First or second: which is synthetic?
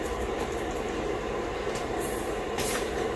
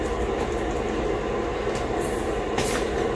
first